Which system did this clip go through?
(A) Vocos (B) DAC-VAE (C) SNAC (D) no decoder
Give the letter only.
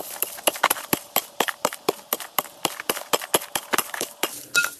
D